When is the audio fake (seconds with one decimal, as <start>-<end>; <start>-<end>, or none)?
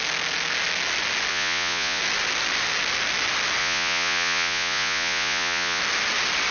1.3-2.0; 3.6-5.8